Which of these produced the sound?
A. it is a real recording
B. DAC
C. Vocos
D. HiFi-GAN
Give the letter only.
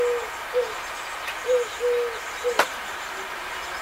A